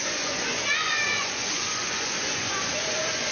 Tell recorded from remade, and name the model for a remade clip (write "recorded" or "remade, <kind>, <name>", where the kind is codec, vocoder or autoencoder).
remade, vocoder, Vocos